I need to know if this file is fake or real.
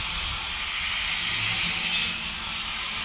real